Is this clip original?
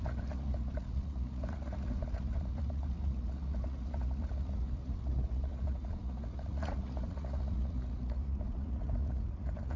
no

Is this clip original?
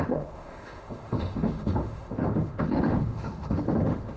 no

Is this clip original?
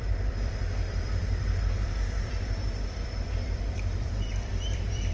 no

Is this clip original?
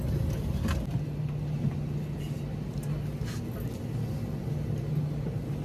yes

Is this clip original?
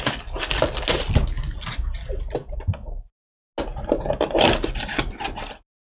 yes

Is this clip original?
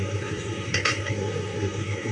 no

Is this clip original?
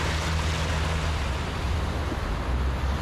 yes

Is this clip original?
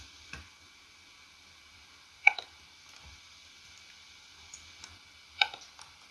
yes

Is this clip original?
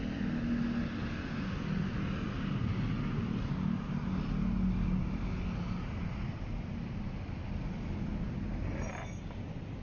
yes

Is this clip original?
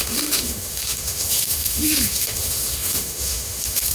no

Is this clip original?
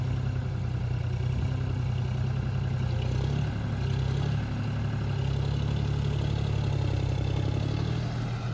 yes